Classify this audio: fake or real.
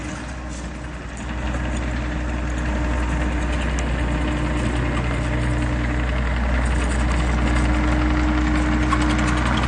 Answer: real